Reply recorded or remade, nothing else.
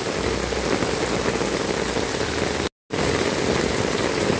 recorded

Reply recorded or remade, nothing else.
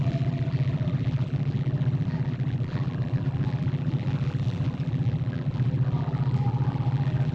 remade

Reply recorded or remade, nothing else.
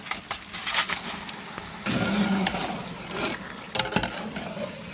recorded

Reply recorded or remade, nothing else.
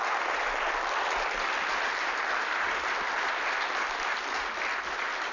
recorded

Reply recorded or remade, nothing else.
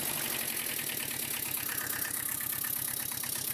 recorded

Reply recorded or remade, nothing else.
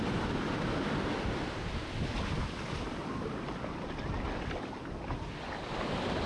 recorded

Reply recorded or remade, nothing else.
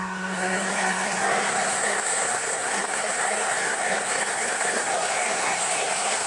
remade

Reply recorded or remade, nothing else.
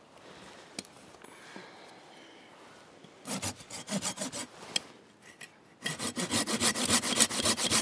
recorded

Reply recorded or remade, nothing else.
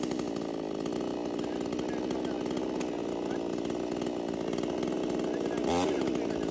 recorded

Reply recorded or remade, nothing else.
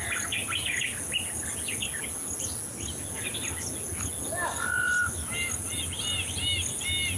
recorded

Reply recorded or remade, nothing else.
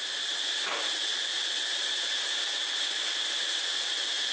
recorded